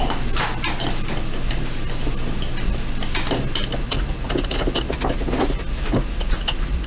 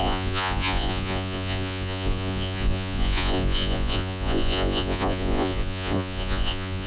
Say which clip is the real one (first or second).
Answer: first